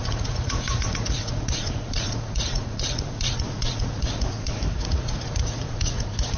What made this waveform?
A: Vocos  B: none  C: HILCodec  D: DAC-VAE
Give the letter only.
A